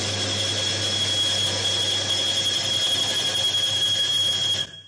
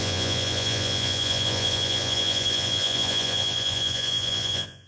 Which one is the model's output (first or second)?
second